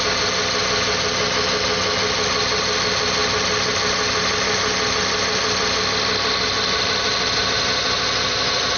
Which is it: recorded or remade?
recorded